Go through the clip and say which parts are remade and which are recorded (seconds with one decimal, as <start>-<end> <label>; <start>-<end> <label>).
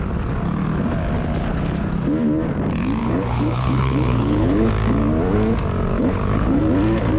0.0-3.0 recorded; 3.0-4.7 remade; 4.7-5.9 recorded; 5.9-6.6 remade; 6.6-7.2 recorded